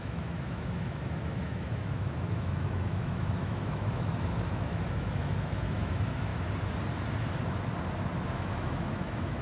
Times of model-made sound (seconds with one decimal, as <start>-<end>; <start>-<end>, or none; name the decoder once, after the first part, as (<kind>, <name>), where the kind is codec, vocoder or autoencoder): 0.0-6.3 (autoencoder, DAC-VAE); 8.3-9.4